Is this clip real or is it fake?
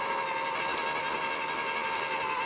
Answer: real